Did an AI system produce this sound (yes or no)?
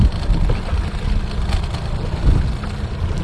no